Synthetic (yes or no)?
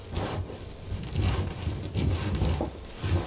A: no